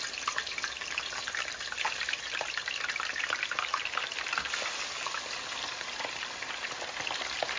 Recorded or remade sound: remade